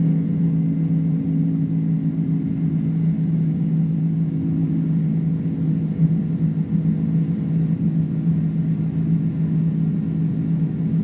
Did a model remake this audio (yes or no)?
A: no